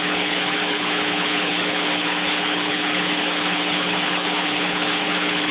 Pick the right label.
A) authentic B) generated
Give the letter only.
B